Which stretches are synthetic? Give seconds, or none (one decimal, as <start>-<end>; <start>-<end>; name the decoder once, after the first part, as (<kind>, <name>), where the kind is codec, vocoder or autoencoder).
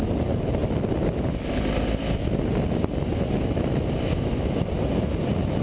none